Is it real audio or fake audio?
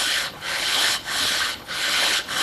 fake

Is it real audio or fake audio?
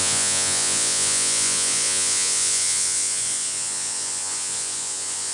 fake